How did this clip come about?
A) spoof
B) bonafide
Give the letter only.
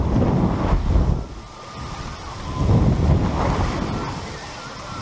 B